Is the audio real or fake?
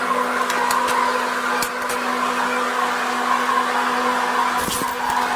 real